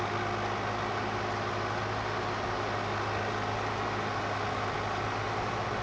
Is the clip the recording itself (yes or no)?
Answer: yes